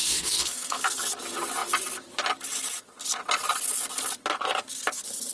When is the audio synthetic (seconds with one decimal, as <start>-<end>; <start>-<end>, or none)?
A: 0.0-1.0